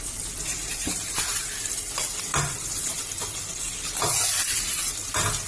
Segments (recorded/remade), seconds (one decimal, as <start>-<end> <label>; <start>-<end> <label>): 0.0-0.7 recorded; 0.7-1.4 remade; 1.4-5.5 recorded